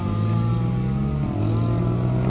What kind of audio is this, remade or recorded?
recorded